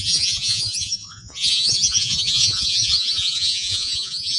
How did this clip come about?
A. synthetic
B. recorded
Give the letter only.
A